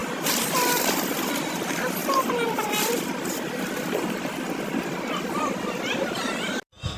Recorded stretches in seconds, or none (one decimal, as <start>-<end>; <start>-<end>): 0.0-7.0